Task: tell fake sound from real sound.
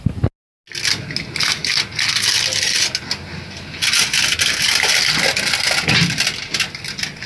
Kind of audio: real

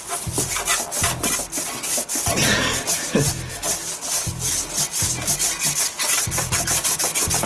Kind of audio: real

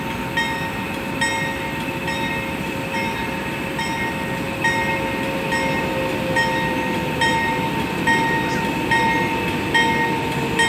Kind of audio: real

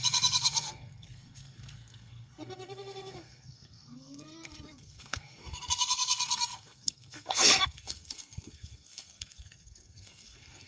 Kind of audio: fake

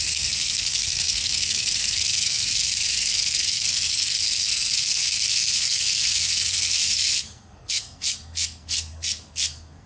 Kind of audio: fake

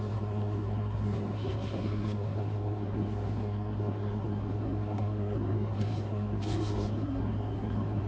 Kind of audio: fake